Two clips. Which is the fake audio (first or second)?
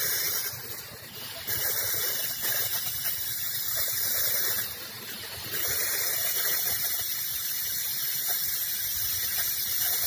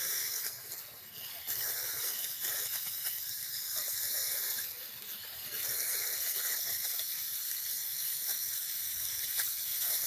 second